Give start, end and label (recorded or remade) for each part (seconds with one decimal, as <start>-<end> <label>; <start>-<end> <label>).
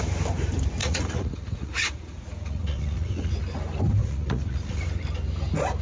0.0-0.8 recorded; 0.8-3.3 remade; 3.3-4.0 recorded; 4.0-4.8 remade; 4.8-5.8 recorded